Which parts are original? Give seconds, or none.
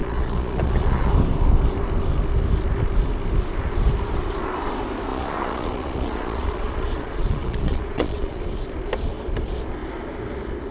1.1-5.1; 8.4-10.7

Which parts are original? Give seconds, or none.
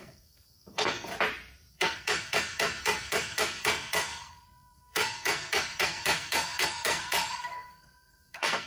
1.1-1.7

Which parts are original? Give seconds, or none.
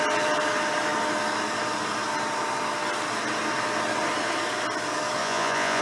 0.0-5.2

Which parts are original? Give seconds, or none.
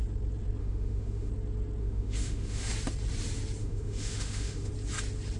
0.0-0.6; 1.3-1.8; 2.7-3.6; 4.7-5.4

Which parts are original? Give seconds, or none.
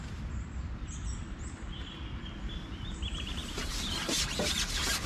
1.2-3.0; 3.4-5.1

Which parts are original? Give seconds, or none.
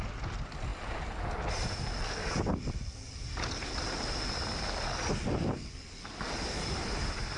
0.0-7.4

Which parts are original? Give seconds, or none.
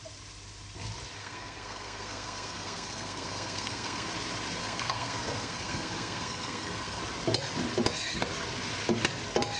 0.0-1.2; 4.1-4.6; 7.0-9.6